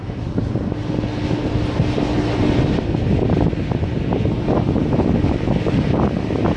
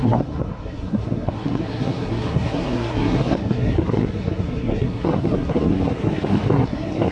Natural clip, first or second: first